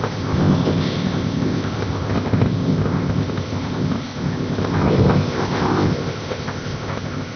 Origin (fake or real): fake